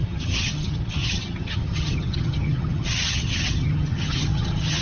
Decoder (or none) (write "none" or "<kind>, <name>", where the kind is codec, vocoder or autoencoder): vocoder, HiFi-GAN